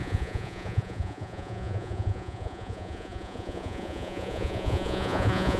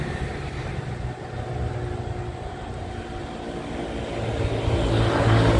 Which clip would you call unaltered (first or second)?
second